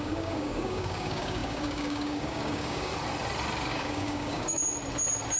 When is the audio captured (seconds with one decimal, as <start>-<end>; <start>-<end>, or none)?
2.9-3.7; 4.6-5.4